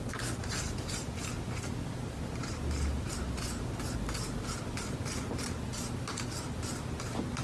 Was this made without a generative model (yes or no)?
yes